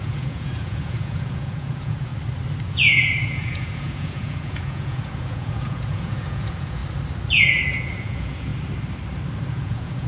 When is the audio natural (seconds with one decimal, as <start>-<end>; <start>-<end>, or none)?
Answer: 2.1-2.7; 6.8-7.3; 8.5-9.5